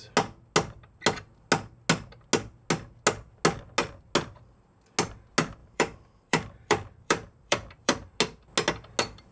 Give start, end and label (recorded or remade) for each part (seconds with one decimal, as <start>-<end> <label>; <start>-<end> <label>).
0.0-5.6 recorded; 5.6-8.1 remade; 8.1-9.3 recorded